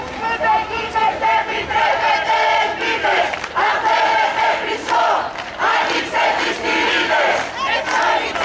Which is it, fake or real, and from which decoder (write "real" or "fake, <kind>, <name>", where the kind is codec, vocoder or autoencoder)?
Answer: real